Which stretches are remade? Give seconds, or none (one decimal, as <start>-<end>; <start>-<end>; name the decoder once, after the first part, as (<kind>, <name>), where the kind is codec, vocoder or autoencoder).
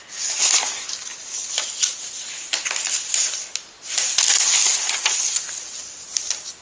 none